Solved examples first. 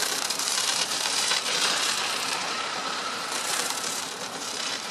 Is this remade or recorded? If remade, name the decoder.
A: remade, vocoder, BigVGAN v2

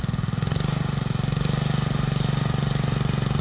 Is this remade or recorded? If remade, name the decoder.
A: recorded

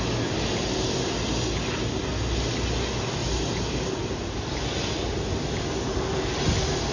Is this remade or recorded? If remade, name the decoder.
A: recorded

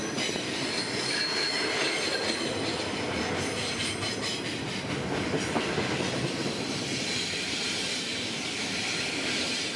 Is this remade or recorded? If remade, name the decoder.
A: recorded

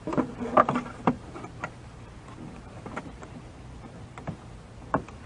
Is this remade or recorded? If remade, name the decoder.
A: remade, vocoder, BigVGAN v2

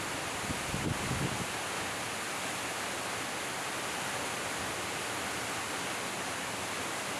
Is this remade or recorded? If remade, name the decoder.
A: recorded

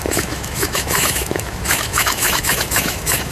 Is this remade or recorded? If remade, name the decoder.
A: remade, autoencoder, DAC-VAE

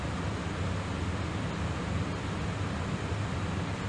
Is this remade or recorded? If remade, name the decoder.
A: recorded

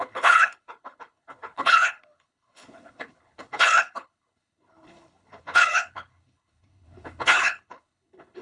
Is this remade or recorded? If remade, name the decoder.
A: remade, codec, HILCodec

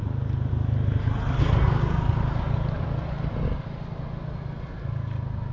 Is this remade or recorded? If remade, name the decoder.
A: recorded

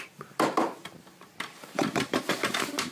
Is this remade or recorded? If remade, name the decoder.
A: remade, vocoder, BigVGAN v2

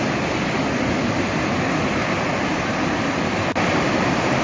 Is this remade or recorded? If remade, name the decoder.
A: recorded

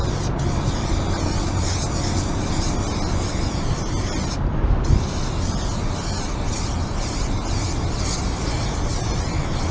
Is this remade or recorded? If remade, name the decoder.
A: recorded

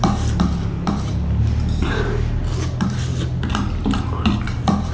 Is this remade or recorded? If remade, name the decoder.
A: recorded